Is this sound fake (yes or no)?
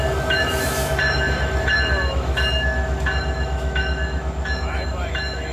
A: yes